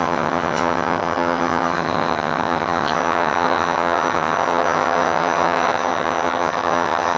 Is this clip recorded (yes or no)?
no